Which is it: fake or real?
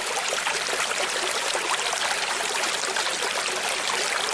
real